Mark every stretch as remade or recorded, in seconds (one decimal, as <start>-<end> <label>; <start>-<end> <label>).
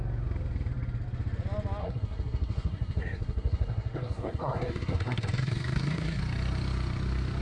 0.0-1.8 recorded; 1.8-6.2 remade; 6.2-7.4 recorded